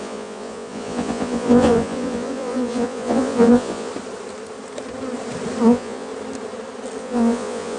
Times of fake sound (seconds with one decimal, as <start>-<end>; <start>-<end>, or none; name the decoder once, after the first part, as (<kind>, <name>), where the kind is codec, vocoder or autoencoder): 0.0-3.9 (vocoder, Vocos); 5.6-6.1; 7.0-7.8

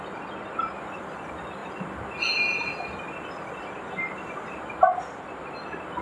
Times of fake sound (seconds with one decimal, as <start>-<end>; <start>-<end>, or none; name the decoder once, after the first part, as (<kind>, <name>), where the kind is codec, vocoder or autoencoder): none

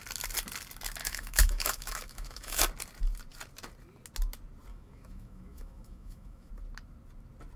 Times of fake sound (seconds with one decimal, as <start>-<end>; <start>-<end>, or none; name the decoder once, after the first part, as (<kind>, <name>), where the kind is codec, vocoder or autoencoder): 1.0-2.6 (autoencoder, DAC-VAE); 4.7-6.5

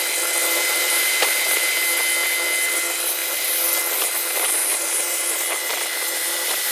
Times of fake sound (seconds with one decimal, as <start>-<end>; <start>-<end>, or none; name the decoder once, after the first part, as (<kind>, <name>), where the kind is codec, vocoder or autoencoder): 0.4-1.6 (vocoder, BigVGAN v2); 4.6-5.4

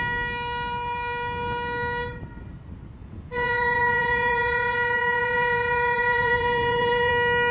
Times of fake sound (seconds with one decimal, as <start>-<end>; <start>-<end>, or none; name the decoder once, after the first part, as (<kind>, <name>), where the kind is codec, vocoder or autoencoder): 3.0-7.1 (vocoder, Vocos)

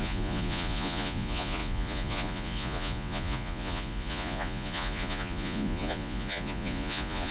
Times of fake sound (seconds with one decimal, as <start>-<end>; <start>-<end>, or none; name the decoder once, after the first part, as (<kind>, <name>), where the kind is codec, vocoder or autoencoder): 0.0-7.3 (vocoder, Vocos)

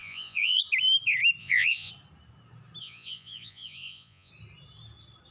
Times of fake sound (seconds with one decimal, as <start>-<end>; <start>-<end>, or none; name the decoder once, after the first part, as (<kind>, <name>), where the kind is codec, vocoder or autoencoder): 0.0-0.6 (vocoder, Vocos); 1.4-1.9; 2.8-4.3